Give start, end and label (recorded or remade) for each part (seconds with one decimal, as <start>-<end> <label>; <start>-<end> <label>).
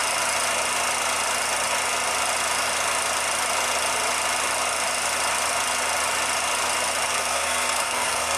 0.0-7.1 recorded; 7.1-8.4 remade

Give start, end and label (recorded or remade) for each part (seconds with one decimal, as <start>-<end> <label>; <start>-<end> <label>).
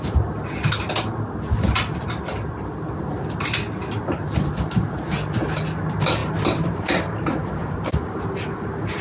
0.0-6.2 recorded; 6.2-8.2 remade; 8.2-9.0 recorded